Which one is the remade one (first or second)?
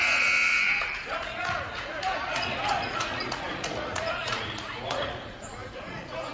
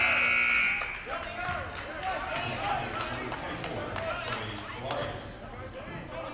first